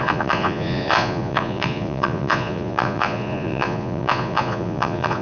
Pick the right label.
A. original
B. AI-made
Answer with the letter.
B